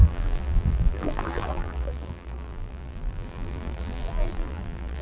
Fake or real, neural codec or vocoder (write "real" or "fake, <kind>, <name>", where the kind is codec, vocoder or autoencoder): fake, vocoder, BigVGAN v2